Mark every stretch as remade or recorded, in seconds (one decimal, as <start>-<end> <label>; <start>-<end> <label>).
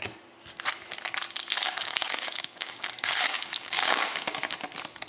0.0-1.6 recorded; 1.6-4.3 remade; 4.3-5.1 recorded